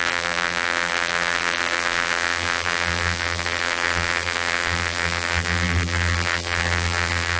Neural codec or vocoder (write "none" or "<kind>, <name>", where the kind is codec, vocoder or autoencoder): vocoder, BigVGAN v2